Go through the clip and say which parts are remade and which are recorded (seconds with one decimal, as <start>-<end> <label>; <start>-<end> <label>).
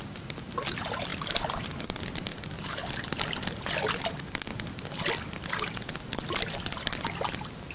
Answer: 0.0-7.7 recorded